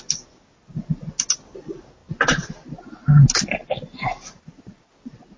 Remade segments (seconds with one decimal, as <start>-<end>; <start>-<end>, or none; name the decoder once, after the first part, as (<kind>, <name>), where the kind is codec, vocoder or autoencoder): none